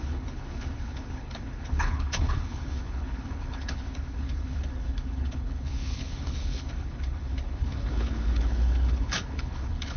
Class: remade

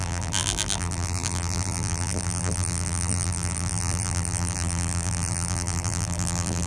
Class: remade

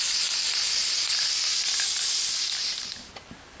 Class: recorded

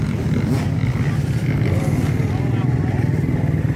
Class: recorded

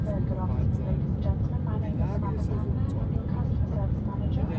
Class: recorded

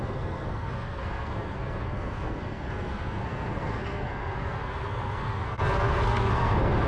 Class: remade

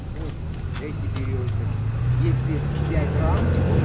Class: recorded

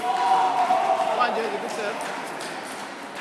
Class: recorded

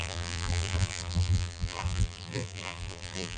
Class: remade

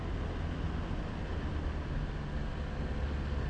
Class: recorded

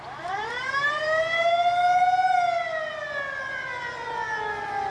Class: recorded